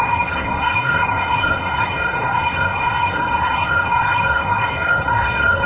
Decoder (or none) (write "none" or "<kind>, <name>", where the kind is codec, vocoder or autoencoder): codec, SNAC